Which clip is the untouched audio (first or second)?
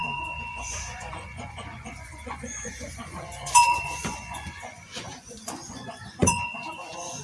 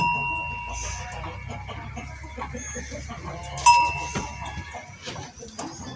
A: second